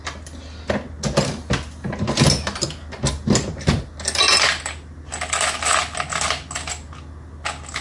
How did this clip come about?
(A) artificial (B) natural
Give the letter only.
B